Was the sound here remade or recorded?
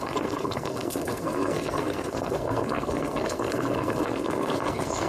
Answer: remade